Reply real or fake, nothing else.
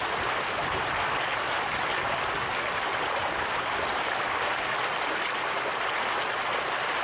real